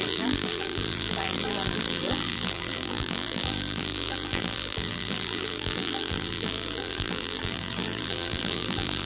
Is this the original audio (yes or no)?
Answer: no